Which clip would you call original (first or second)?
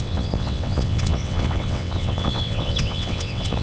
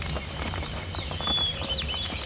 second